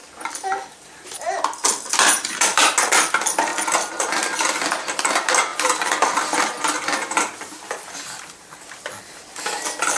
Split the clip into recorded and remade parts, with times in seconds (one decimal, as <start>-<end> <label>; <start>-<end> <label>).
0.0-10.0 recorded